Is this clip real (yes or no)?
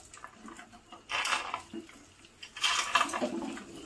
yes